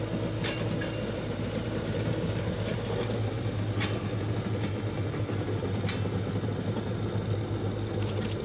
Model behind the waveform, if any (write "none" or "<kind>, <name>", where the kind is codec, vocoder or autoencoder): none